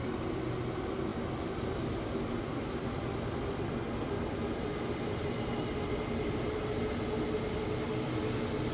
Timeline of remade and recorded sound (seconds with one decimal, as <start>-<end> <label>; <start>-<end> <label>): 0.0-8.7 recorded